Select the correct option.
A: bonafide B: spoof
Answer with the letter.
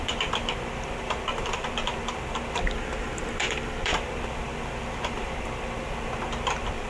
B